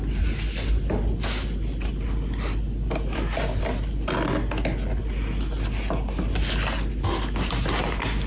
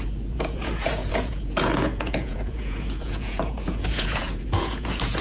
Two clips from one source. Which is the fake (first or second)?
second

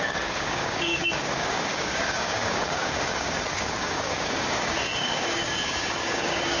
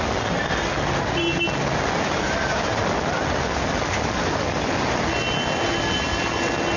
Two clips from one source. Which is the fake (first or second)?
first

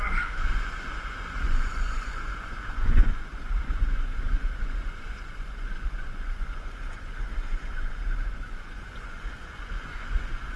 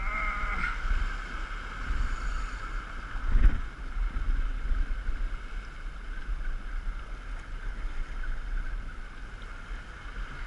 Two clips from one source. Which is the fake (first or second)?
first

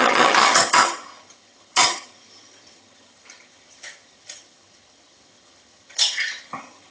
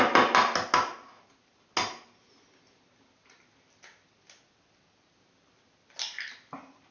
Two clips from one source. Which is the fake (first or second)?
first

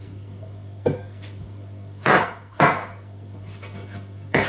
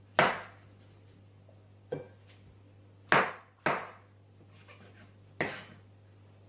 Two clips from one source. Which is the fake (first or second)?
first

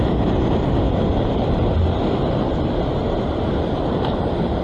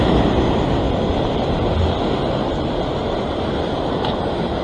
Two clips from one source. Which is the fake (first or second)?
first